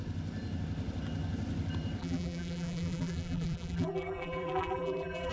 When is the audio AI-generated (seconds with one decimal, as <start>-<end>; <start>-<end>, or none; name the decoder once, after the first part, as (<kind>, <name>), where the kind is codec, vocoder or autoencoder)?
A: 2.0-5.3 (vocoder, BigVGAN v2)